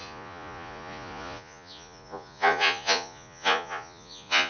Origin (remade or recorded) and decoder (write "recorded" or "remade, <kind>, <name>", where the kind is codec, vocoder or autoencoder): remade, vocoder, Vocos